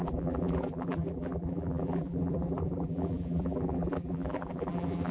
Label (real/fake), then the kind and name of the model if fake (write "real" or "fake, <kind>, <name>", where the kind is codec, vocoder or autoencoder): fake, vocoder, BigVGAN v2